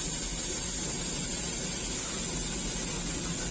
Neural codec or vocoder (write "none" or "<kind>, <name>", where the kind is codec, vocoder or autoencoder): none